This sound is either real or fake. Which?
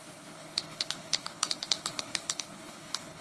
fake